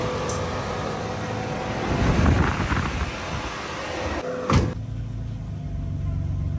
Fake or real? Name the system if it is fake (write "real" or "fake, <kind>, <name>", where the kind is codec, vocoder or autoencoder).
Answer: real